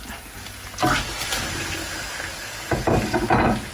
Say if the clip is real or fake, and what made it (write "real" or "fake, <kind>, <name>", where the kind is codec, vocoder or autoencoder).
real